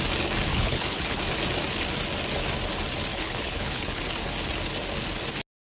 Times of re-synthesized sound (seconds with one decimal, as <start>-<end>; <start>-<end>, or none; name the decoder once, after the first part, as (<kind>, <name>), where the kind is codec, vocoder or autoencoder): 0.5-1.2 (codec, HILCodec); 3.1-4.0